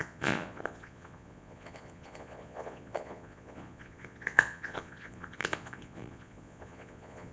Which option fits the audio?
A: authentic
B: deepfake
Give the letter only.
B